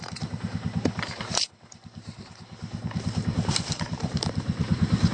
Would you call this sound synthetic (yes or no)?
yes